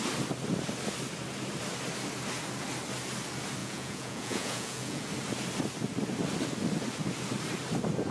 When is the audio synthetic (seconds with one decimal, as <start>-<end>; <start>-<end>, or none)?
3.6-5.1